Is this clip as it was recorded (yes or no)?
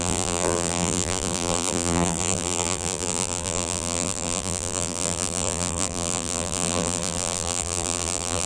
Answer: no